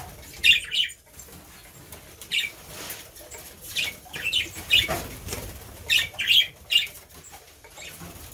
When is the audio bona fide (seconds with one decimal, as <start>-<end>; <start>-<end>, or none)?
0.4-2.0